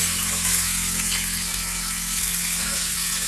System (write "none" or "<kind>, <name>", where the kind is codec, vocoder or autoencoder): codec, SNAC